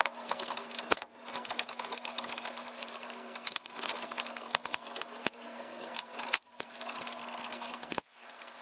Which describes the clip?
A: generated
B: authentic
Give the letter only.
A